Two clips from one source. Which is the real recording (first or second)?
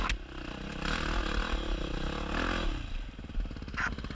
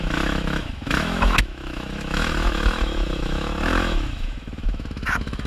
first